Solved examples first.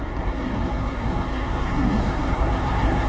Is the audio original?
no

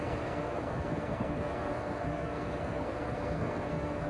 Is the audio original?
no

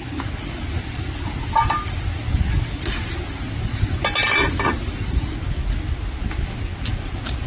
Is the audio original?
yes